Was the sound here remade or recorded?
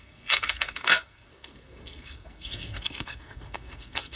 remade